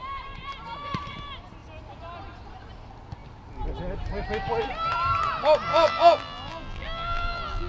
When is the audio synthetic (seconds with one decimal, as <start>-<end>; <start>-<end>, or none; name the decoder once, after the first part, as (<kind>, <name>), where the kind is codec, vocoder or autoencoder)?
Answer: 5.7-7.7 (vocoder, BigVGAN v2)